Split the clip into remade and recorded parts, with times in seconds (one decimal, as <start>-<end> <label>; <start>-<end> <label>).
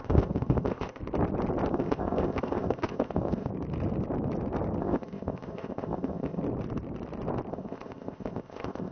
0.0-1.0 remade; 1.0-1.7 recorded; 1.7-3.5 remade; 3.5-4.8 recorded; 4.8-6.4 remade; 6.4-7.5 recorded; 7.5-8.9 remade